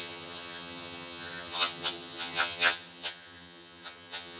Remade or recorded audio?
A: remade